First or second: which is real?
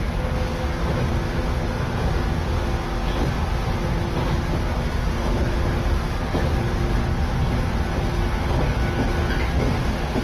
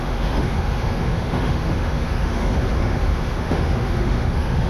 first